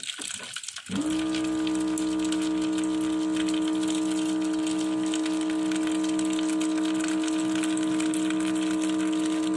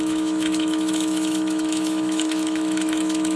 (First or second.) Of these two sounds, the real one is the first